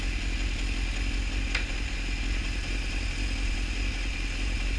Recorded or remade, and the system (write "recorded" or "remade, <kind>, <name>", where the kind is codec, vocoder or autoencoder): recorded